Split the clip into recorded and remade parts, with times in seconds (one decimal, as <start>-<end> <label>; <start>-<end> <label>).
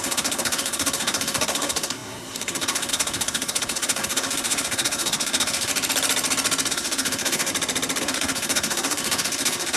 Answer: 0.0-5.7 remade; 5.7-6.7 recorded; 6.7-7.5 remade; 7.5-8.0 recorded; 8.0-9.8 remade